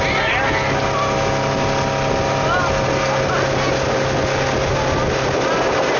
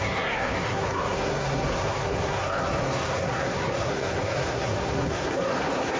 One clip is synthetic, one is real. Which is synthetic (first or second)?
second